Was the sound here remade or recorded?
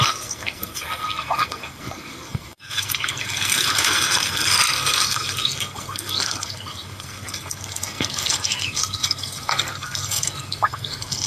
remade